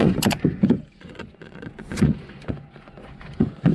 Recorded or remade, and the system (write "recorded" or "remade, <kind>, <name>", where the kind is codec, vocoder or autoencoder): remade, vocoder, Vocos